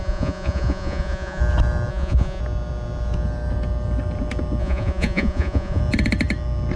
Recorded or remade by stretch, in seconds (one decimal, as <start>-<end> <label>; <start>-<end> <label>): 0.0-1.4 remade; 1.4-1.9 recorded; 1.9-2.4 remade; 2.4-4.6 recorded; 4.6-5.8 remade; 5.8-6.8 recorded